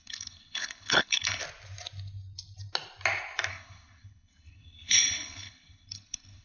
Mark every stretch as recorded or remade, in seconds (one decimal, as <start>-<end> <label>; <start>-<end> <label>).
0.0-1.4 remade; 1.4-3.5 recorded; 3.5-6.4 remade